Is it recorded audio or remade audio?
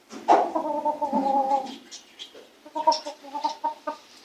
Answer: remade